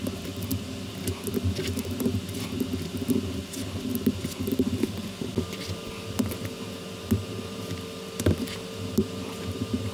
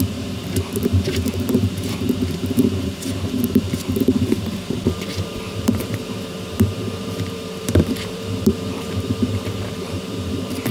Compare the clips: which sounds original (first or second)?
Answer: first